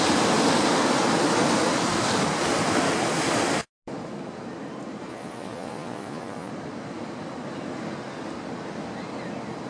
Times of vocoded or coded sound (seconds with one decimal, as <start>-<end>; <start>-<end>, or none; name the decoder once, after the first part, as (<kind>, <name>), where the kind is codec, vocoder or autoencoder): 5.1-6.5 (vocoder, Vocos)